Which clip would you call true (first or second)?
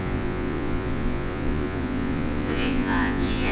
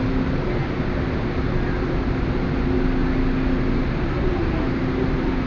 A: second